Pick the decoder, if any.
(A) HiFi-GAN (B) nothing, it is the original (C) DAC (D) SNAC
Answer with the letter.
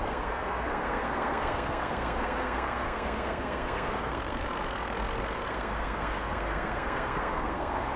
D